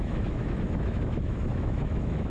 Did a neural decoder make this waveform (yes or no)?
yes